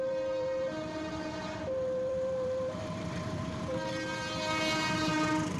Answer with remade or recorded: remade